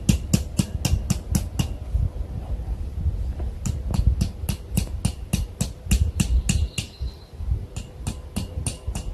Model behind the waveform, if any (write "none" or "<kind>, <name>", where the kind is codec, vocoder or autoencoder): none